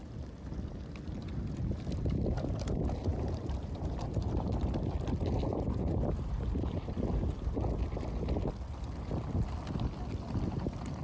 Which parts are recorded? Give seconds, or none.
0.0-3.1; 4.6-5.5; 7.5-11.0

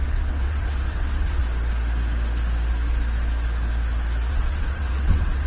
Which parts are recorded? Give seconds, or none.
1.4-4.3